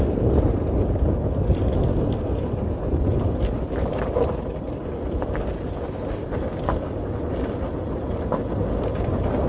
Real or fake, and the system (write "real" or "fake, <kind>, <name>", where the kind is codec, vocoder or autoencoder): real